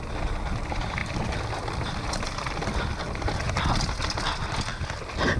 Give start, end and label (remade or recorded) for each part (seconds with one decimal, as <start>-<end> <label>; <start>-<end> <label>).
0.0-5.4 recorded